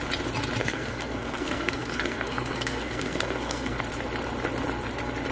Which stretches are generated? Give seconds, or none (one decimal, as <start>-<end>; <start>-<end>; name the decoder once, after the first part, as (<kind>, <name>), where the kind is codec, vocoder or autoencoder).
0.6-3.8 (codec, SNAC)